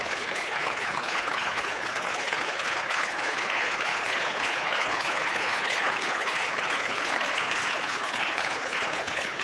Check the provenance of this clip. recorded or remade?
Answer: remade